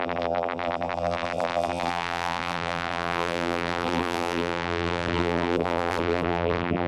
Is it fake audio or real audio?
fake